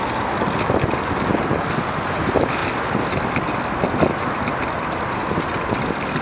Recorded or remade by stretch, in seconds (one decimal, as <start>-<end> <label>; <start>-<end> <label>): 0.0-6.2 recorded

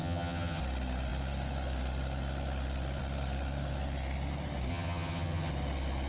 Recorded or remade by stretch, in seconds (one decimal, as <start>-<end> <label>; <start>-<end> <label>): 0.0-0.6 remade; 0.6-4.7 recorded; 4.7-5.5 remade; 5.5-6.1 recorded

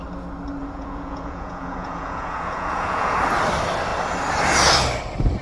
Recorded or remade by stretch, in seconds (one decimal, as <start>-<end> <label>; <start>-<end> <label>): 0.0-0.6 recorded; 0.6-3.2 remade; 3.2-5.4 recorded

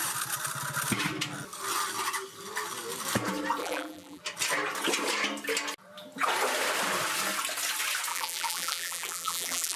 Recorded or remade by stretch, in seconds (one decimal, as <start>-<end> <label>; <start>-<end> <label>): 0.0-3.6 recorded; 3.6-4.2 remade; 4.2-8.1 recorded; 8.1-9.8 remade

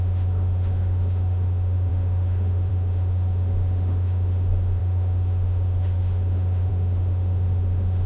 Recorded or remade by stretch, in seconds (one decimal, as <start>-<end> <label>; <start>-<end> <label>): 0.0-8.1 remade

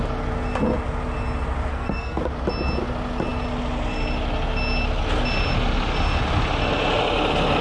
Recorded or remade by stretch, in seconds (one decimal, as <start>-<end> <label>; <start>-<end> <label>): 0.0-1.7 recorded; 1.7-2.2 remade; 2.2-7.6 recorded

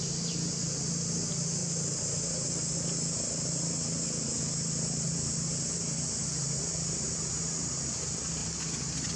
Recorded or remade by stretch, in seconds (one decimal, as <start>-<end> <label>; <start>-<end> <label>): 0.0-9.2 recorded

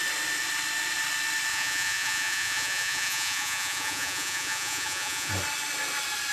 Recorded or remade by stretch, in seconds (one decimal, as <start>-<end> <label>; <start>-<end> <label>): 0.0-1.5 recorded; 1.5-5.3 remade; 5.3-6.3 recorded